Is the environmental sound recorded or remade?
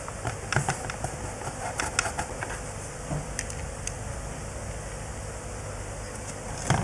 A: recorded